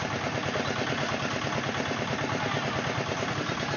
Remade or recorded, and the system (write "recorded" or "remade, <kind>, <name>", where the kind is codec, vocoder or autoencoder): recorded